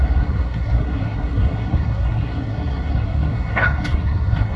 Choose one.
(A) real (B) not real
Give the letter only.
B